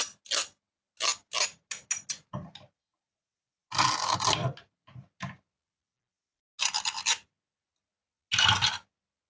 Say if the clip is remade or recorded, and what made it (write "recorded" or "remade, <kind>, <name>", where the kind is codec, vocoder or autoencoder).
recorded